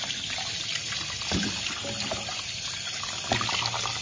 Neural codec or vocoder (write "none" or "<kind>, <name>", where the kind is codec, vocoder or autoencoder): none